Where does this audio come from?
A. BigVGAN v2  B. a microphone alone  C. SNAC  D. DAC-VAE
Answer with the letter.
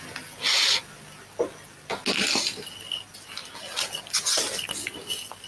B